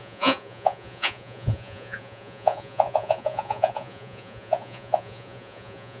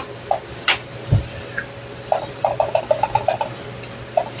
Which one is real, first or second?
second